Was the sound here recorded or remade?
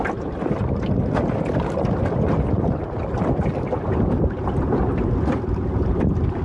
recorded